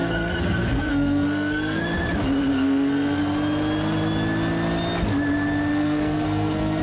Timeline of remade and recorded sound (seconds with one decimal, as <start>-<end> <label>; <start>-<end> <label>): 0.0-1.8 remade; 1.8-2.5 recorded; 2.5-3.2 remade; 3.2-5.7 recorded; 5.7-6.8 remade